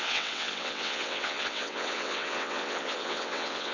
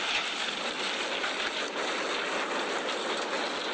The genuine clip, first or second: second